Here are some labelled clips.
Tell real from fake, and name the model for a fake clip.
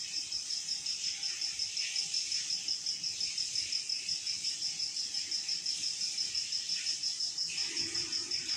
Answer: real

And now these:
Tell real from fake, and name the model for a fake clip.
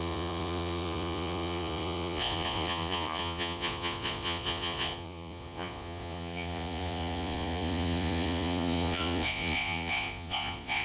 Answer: fake, vocoder, Vocos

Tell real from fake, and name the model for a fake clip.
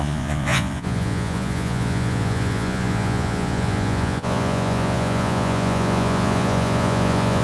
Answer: fake, vocoder, Vocos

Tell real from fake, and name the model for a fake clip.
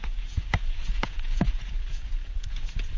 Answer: fake, vocoder, Vocos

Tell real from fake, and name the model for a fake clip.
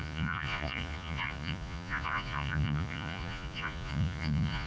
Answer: fake, vocoder, Vocos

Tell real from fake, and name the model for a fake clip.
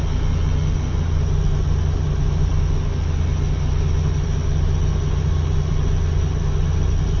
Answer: real